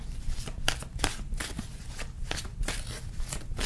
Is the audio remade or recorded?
remade